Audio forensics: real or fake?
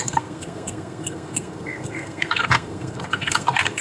fake